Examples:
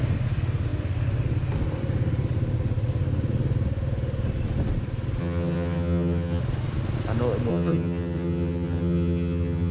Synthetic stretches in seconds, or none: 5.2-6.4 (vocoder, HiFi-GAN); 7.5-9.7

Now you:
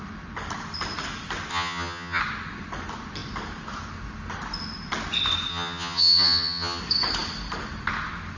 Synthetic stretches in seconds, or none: 1.5-2.2 (vocoder, HiFi-GAN); 5.5-6.8

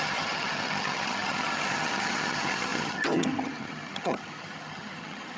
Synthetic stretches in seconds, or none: 0.0-5.4 (vocoder, HiFi-GAN)

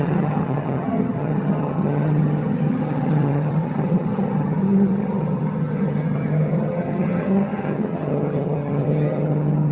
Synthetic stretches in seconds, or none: 0.0-9.7 (vocoder, HiFi-GAN)

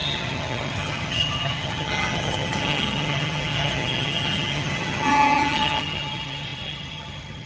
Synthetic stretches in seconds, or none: 0.0-7.5 (vocoder, HiFi-GAN)

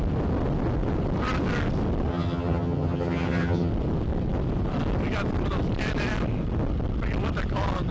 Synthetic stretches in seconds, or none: 2.1-3.7 (vocoder, HiFi-GAN)

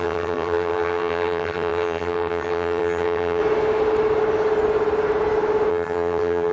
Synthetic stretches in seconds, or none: 0.0-3.4 (vocoder, HiFi-GAN); 5.7-6.5

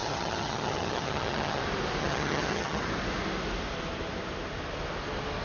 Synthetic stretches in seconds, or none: 0.0-1.6 (vocoder, HiFi-GAN); 2.0-2.8